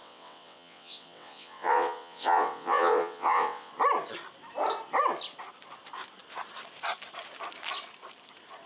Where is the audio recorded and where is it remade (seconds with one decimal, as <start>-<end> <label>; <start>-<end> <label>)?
0.0-3.7 remade; 3.7-8.7 recorded